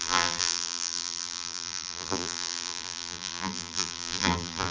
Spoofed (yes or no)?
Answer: yes